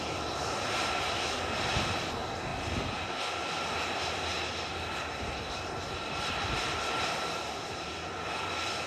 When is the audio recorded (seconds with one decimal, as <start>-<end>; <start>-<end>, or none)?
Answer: 0.0-4.3; 7.9-8.9